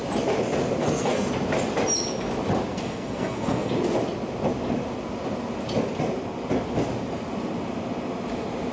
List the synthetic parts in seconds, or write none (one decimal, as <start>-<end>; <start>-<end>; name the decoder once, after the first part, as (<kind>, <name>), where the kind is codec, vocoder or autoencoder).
0.8-1.3 (codec, SNAC); 2.7-3.7